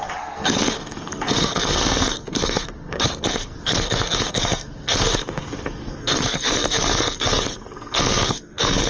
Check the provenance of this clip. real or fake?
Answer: fake